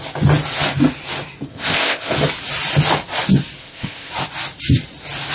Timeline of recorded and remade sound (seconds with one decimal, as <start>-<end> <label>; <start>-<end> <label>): 0.0-1.5 recorded; 1.5-2.1 remade; 2.1-3.6 recorded; 3.6-4.1 remade; 4.1-5.3 recorded